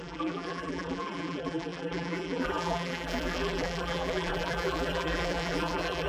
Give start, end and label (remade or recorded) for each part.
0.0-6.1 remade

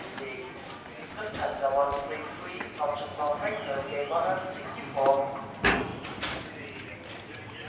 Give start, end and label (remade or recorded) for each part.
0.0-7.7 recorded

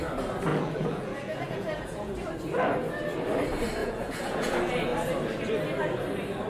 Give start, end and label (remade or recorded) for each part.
0.0-0.5 recorded; 0.5-2.1 remade; 2.1-3.8 recorded; 3.8-4.5 remade; 4.5-6.5 recorded

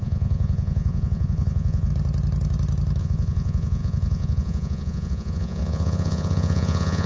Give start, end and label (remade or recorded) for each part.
0.0-1.9 remade; 1.9-3.0 recorded; 3.0-7.1 remade

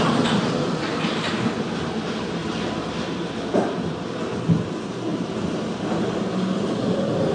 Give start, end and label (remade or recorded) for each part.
0.0-7.3 recorded

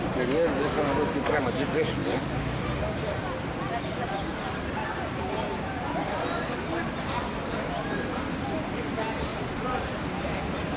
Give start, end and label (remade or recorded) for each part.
0.0-10.8 recorded